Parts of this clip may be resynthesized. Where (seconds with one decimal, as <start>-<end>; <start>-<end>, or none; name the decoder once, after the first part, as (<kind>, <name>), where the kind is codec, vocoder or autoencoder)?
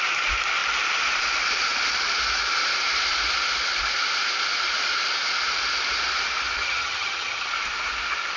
6.6-7.5 (vocoder, HiFi-GAN)